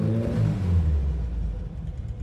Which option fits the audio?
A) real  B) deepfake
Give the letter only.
A